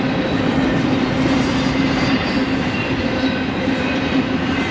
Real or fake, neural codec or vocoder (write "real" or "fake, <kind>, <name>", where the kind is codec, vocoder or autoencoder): fake, vocoder, BigVGAN v2